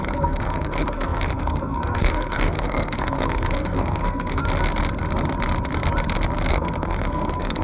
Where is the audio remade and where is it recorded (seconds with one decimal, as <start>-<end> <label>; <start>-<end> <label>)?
0.0-4.4 remade; 4.4-6.5 recorded; 6.5-7.6 remade

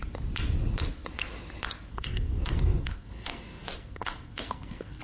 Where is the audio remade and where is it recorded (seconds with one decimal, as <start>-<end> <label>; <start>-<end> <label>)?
0.0-1.9 recorded; 1.9-5.0 remade